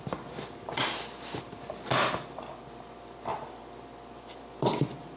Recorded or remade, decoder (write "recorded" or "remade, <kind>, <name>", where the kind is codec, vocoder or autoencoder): recorded